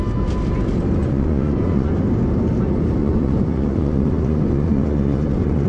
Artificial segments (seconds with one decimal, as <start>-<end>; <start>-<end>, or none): 1.0-1.9; 3.0-5.7